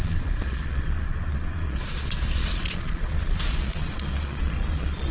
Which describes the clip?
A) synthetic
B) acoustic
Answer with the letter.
A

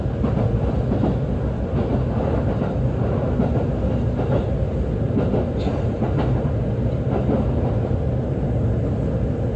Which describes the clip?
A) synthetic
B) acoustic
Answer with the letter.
B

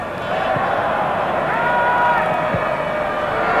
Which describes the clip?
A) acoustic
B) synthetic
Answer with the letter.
A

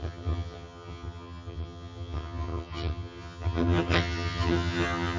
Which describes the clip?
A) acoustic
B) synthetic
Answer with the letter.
B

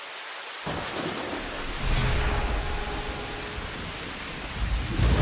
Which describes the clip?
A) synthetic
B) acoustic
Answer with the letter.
B